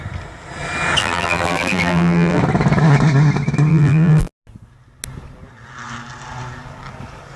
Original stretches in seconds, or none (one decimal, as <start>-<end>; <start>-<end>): 0.0-1.0; 2.4-3.7; 4.3-7.4